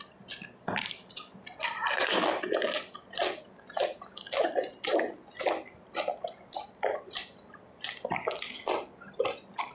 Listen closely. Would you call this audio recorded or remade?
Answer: remade